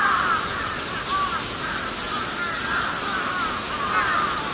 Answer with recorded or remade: recorded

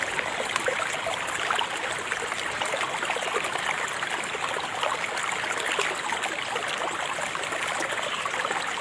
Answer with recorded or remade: recorded